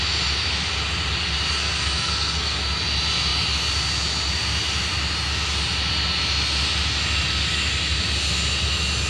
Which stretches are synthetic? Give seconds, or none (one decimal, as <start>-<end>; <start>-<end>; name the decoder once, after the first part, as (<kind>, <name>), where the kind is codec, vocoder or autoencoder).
1.6-2.6 (codec, SNAC)